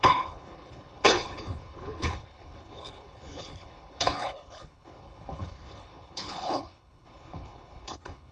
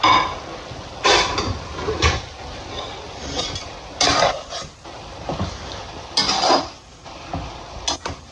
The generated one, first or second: first